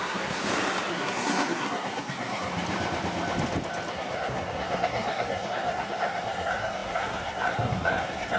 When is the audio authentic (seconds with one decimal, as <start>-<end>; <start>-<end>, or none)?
0.4-0.9; 2.5-3.9